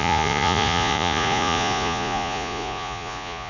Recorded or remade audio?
remade